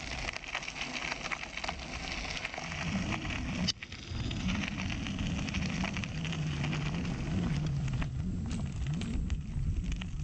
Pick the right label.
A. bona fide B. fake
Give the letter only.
A